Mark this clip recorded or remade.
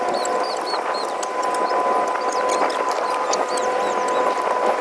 recorded